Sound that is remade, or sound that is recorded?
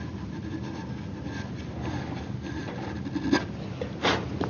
recorded